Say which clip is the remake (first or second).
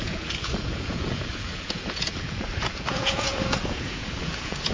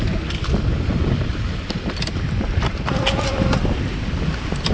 first